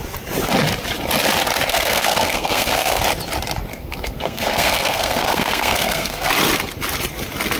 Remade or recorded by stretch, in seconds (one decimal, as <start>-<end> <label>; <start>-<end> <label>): 0.0-1.7 recorded; 1.7-3.0 remade; 3.0-3.7 recorded; 3.7-6.3 remade; 6.3-7.6 recorded